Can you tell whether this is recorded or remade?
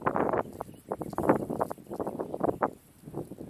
recorded